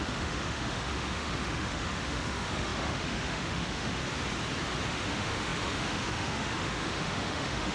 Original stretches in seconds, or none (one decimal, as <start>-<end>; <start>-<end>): 4.0-4.9